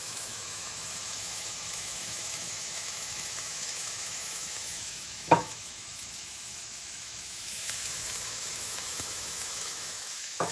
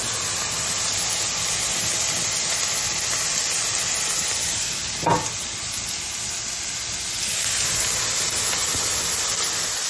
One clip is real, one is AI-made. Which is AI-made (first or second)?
first